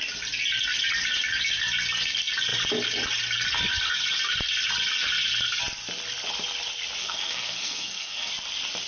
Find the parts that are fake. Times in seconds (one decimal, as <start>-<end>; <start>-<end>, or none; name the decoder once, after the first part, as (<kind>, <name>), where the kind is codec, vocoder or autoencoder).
7.0-8.3 (codec, SNAC)

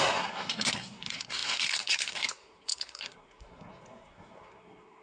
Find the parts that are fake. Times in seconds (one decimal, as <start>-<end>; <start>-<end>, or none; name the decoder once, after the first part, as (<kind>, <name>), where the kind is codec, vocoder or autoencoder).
0.0-5.0 (codec, SNAC)

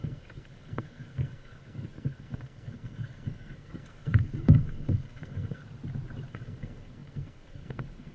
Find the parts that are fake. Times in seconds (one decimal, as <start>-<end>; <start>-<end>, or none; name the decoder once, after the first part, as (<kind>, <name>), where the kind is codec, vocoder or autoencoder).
0.0-5.6 (codec, SNAC); 6.3-8.1